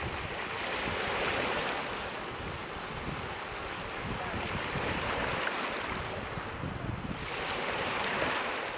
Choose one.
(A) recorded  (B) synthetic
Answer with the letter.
A